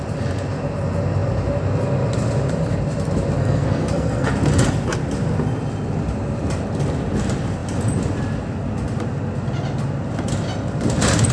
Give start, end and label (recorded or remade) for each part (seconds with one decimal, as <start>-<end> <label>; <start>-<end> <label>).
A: 0.0-3.4 recorded; 3.4-4.3 remade; 4.3-11.3 recorded